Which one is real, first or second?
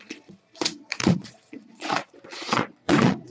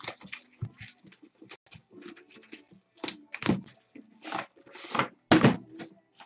second